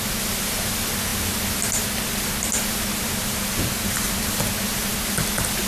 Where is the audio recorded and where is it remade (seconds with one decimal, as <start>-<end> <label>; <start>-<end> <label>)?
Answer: 0.0-2.9 recorded; 2.9-4.4 remade; 4.4-5.7 recorded